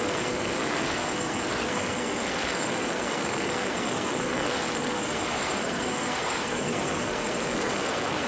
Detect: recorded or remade remade